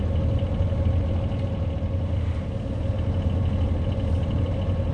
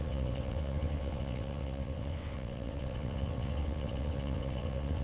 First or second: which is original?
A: first